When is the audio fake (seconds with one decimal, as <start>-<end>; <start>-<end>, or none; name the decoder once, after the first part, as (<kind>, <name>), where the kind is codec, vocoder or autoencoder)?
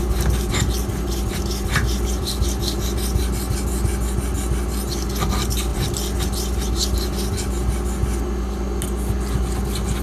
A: none